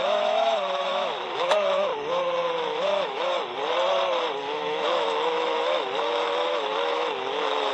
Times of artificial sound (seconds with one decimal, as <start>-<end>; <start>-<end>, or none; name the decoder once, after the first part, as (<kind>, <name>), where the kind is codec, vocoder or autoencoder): 0.0-1.9 (autoencoder, DAC-VAE); 2.6-3.4; 4.4-7.7